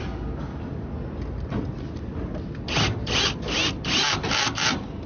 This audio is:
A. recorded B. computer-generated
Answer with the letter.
A